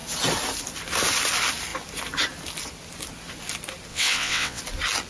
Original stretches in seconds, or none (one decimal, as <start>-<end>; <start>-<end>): 0.0-3.9; 4.6-5.1